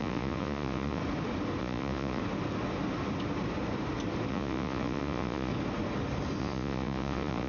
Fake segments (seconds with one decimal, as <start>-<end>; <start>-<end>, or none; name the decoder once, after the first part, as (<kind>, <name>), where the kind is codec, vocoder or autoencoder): 0.0-1.0 (vocoder, Vocos); 1.6-2.2; 4.3-5.5; 6.4-7.5